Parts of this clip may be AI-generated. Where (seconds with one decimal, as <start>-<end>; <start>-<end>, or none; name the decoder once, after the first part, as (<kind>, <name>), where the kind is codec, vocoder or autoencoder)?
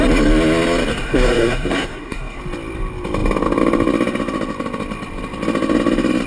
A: 0.9-2.4 (codec, SNAC)